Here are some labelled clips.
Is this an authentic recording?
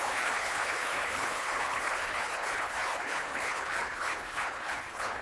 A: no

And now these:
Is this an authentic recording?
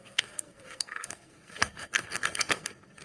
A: no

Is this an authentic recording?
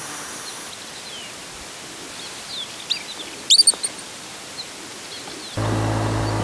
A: yes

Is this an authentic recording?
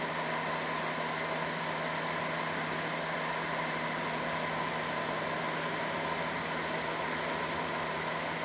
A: yes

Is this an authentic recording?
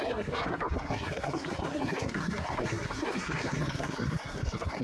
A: no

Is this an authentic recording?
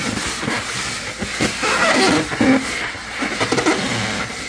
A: yes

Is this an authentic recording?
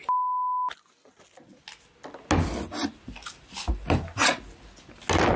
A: yes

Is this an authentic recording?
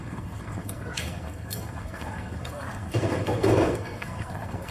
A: no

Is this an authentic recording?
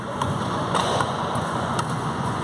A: no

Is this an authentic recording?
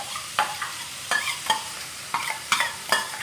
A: no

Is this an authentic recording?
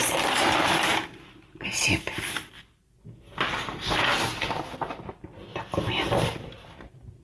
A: yes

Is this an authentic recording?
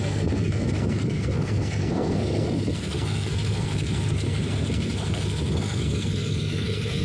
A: no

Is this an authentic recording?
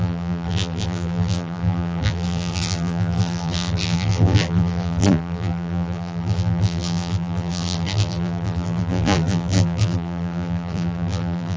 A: no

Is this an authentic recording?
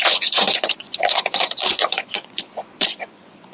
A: no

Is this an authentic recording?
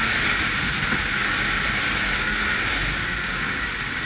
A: yes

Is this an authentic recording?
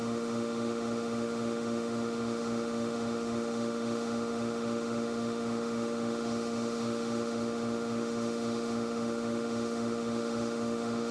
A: no